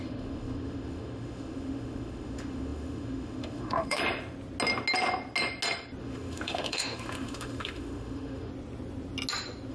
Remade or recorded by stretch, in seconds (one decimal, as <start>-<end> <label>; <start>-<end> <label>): 0.0-4.0 remade; 4.0-6.0 recorded; 6.0-8.5 remade; 8.5-9.7 recorded

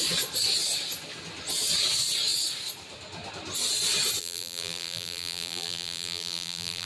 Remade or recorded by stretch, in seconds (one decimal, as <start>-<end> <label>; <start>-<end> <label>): 0.0-4.2 recorded; 4.2-6.9 remade

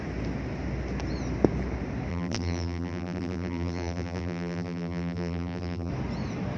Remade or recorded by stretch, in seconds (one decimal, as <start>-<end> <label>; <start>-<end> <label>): 0.0-2.1 recorded; 2.1-5.9 remade; 5.9-6.6 recorded

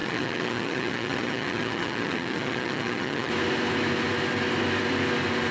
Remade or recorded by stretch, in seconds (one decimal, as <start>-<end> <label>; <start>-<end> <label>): 0.0-3.3 remade; 3.3-5.5 recorded